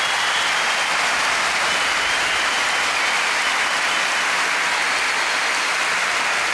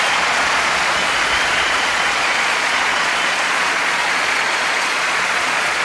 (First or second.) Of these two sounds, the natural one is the first